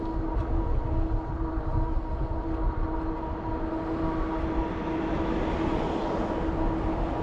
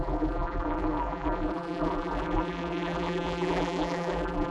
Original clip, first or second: first